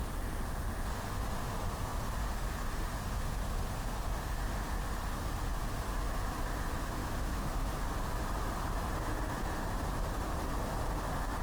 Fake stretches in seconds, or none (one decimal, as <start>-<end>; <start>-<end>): 7.0-7.7